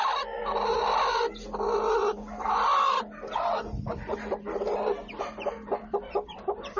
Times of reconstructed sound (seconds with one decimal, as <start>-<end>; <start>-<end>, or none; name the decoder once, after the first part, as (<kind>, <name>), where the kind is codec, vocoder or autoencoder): 0.0-0.4 (vocoder, BigVGAN v2); 3.9-6.8

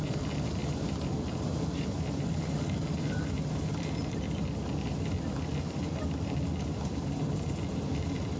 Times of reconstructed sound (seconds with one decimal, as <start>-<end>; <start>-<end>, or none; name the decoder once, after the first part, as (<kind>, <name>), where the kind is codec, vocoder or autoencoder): 0.0-0.6 (vocoder, BigVGAN v2); 1.8-8.4

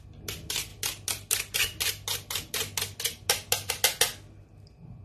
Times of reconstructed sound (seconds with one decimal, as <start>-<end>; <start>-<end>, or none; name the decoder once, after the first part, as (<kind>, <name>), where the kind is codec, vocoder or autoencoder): none

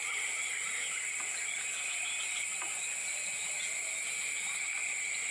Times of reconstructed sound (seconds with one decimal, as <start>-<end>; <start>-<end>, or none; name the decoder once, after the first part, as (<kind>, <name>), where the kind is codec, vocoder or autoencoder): 0.4-3.6 (vocoder, BigVGAN v2); 4.8-5.3

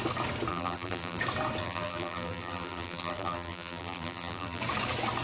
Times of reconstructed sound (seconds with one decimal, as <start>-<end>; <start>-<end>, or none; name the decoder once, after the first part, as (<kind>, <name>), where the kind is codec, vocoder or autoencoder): 0.5-1.2 (vocoder, BigVGAN v2); 1.6-4.6

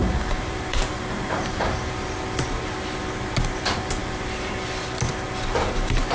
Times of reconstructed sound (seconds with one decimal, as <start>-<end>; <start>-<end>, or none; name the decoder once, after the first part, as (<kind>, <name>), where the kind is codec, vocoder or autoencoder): 0.0-1.9 (vocoder, BigVGAN v2); 4.0-4.5